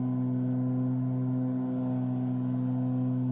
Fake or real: real